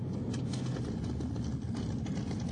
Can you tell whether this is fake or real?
real